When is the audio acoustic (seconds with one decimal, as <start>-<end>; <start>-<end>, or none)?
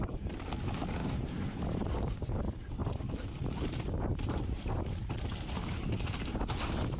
0.0-1.0; 2.2-2.8